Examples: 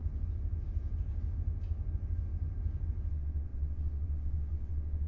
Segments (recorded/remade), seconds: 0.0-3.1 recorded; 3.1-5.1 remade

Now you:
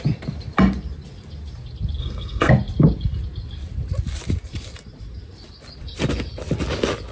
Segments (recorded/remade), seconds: 0.0-2.0 recorded; 2.0-2.5 remade; 2.5-7.1 recorded

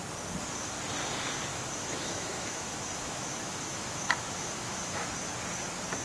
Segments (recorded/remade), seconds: 0.0-1.5 recorded; 1.5-5.1 remade; 5.1-6.0 recorded

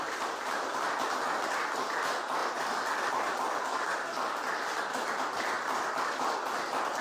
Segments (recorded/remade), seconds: 0.0-7.0 recorded